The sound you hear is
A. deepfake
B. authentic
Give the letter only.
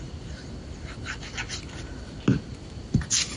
B